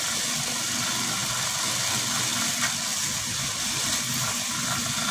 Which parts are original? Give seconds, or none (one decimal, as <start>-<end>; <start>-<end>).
0.0-5.1